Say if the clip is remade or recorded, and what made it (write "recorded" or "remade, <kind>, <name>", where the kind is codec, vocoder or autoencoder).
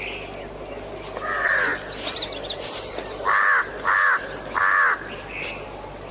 recorded